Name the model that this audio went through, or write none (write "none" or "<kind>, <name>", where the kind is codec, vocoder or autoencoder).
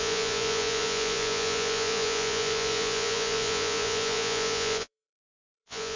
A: vocoder, Vocos